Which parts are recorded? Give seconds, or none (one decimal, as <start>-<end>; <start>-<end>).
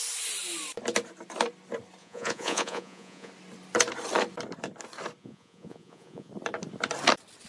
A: 0.0-2.0; 3.3-5.2; 6.3-7.5